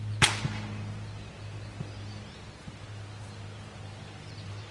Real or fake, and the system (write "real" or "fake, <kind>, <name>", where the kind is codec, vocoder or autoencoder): real